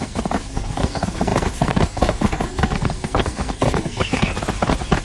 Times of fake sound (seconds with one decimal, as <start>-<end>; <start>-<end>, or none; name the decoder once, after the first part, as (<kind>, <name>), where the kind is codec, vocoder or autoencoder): 0.0-4.3 (codec, SNAC)